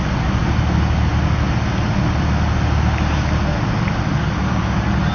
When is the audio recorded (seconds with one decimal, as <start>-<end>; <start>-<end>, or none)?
0.0-5.1